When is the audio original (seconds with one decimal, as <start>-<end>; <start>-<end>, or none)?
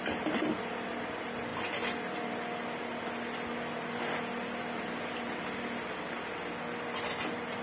0.0-7.6